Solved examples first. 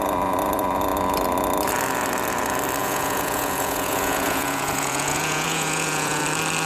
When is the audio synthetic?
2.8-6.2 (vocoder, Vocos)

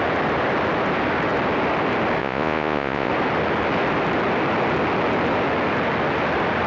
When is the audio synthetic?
2.2-3.1 (vocoder, Vocos)

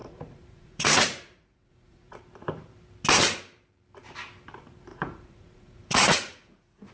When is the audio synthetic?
0.0-2.2 (vocoder, Vocos); 4.9-6.9

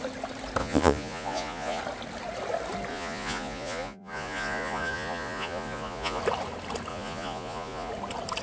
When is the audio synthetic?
0.6-1.8 (vocoder, Vocos); 2.9-6.2; 6.9-7.9

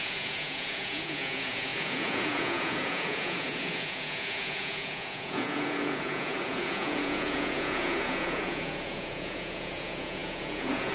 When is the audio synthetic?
0.0-10.9 (vocoder, Vocos)

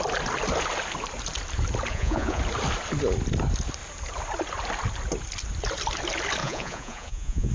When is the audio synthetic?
1.9-2.4 (vocoder, Vocos); 6.4-7.5

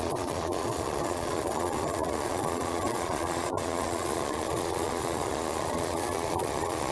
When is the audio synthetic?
0.0-6.9 (vocoder, Vocos)

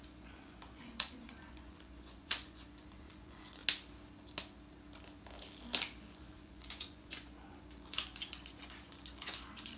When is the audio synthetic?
0.0-3.6 (vocoder, Vocos); 6.0-9.8